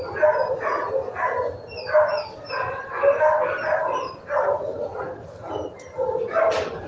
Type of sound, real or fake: real